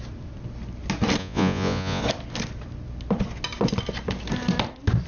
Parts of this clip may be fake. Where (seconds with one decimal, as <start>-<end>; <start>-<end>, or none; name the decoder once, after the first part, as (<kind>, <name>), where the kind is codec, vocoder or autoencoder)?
1.2-2.0 (vocoder, Vocos)